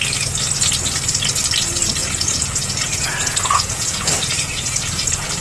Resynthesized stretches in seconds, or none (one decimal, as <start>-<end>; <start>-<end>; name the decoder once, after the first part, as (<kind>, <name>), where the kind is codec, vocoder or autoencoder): 2.0-5.4 (vocoder, Vocos)